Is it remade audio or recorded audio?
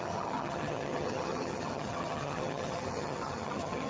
remade